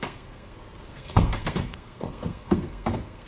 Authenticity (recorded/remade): remade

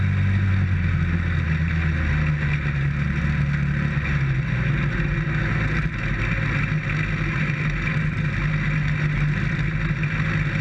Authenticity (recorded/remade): recorded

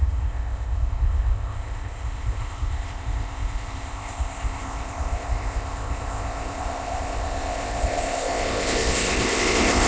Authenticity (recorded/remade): remade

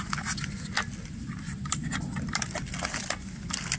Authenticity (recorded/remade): recorded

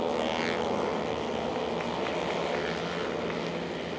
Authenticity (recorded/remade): recorded